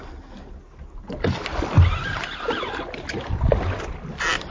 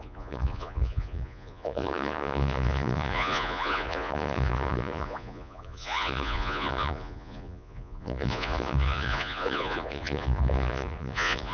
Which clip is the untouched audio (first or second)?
first